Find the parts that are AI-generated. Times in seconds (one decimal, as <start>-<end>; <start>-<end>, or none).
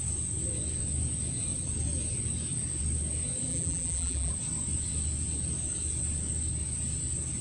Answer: 3.5-4.3